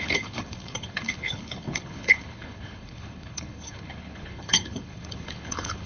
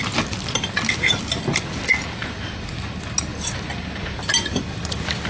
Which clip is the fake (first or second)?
first